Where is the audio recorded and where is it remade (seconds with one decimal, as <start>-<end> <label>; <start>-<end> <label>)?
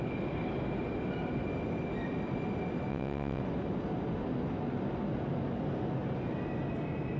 0.0-2.9 recorded; 2.9-3.4 remade; 3.4-7.2 recorded